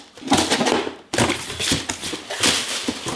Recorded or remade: recorded